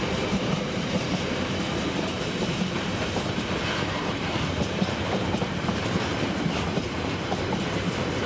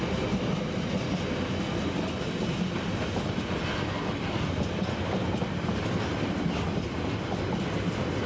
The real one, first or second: second